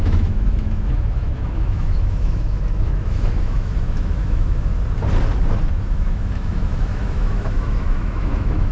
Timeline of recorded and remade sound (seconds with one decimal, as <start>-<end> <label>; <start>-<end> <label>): 0.0-4.7 remade; 4.7-5.7 recorded; 5.7-8.7 remade